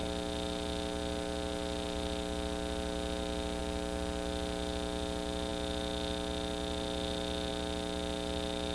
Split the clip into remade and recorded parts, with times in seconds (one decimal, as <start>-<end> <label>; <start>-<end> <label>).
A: 0.0-8.7 recorded